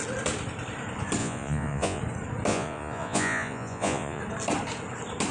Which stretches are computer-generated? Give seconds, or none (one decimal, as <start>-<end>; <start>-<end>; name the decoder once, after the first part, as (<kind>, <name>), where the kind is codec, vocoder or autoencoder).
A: 1.2-2.0 (vocoder, Vocos); 2.5-4.2